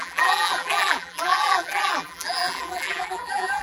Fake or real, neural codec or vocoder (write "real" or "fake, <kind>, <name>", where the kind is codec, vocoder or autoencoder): fake, vocoder, BigVGAN v2